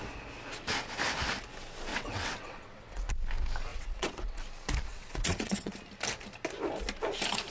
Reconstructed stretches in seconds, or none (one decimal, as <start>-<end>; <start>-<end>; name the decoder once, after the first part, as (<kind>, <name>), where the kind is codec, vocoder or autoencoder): 1.9-3.1 (vocoder, WaveNeXt); 3.7-4.4; 4.9-5.7